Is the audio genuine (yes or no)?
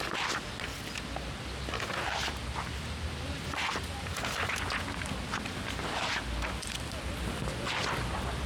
yes